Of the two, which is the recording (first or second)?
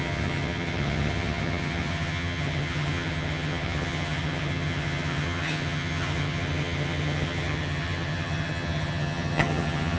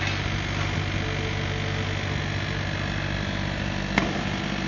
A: second